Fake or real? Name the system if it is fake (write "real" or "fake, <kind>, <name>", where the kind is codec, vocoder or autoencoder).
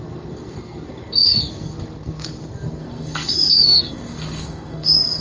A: fake, codec, SNAC